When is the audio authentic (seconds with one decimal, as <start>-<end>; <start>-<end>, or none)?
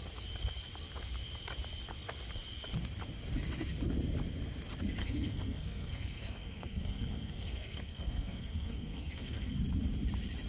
0.0-5.0; 9.6-10.5